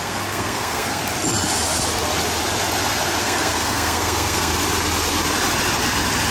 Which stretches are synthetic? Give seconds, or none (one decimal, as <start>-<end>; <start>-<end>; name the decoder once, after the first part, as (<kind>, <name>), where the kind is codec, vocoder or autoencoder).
0.0-1.0 (codec, SNAC); 3.2-4.5